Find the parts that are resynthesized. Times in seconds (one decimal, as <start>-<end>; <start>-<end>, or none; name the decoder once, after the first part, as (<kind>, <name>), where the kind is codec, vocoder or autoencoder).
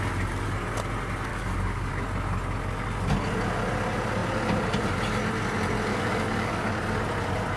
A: 1.3-1.9 (codec, DAC); 5.9-6.7